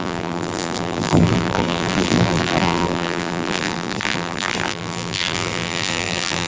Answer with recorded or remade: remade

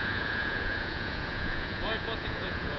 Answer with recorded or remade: remade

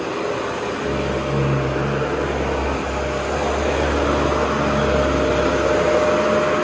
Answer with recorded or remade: recorded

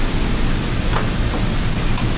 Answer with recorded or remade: recorded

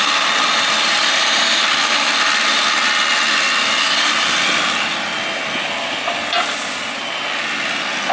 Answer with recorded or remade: recorded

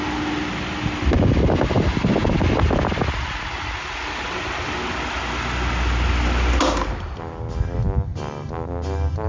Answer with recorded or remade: recorded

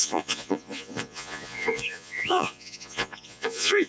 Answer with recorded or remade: remade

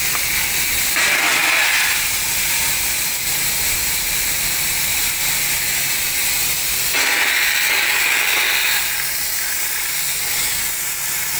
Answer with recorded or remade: recorded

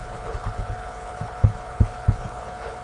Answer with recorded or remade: remade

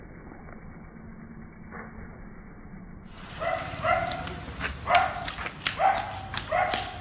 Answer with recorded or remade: recorded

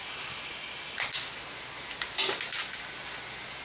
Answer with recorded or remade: recorded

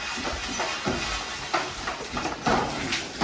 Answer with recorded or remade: recorded